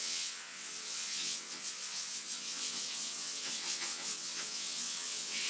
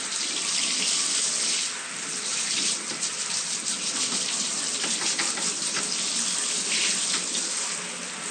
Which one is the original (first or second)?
second